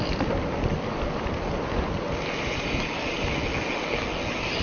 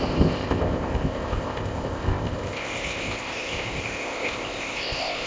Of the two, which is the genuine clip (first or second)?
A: first